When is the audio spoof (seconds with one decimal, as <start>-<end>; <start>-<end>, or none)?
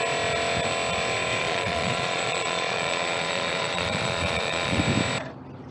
1.4-4.8